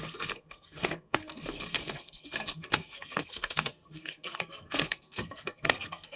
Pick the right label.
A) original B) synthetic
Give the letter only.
B